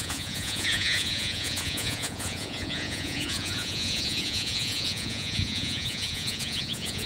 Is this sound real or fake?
fake